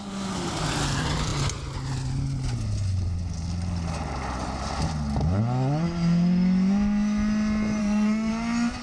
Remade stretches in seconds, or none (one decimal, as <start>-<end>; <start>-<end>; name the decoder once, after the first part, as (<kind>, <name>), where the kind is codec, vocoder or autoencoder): 7.8-8.3 (codec, SNAC)